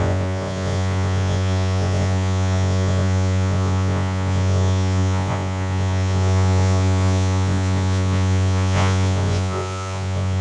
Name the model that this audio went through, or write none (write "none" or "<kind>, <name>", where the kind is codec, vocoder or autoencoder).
vocoder, Vocos